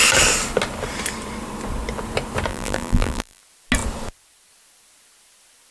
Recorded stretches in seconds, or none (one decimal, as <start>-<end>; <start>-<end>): 0.0-2.5; 3.4-5.7